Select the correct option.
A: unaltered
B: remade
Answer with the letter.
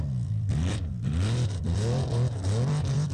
B